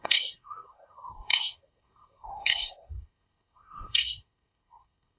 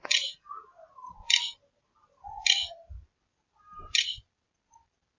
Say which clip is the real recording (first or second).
second